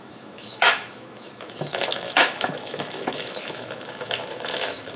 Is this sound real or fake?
fake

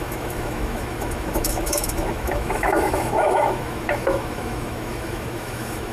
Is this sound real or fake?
fake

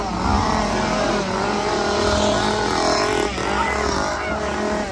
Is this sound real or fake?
real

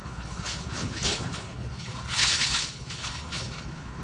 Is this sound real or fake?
fake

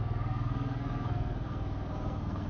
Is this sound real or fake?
fake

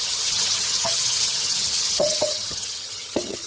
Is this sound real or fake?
fake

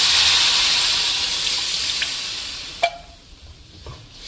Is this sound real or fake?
real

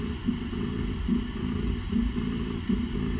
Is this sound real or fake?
real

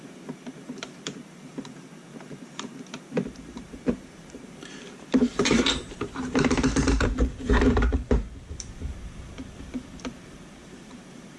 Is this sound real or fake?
fake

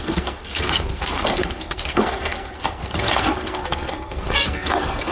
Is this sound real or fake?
fake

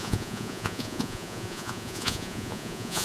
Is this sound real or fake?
fake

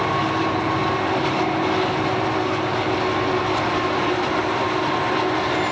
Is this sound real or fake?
real